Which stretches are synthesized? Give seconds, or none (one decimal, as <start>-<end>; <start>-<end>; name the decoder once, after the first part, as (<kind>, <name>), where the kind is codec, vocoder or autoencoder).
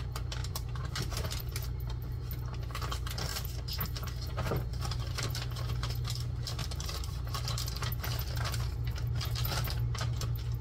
0.4-1.4 (vocoder, BigVGAN v2); 4.7-5.3; 6.6-7.3